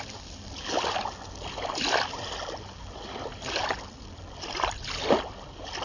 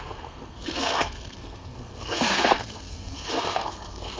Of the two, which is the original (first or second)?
first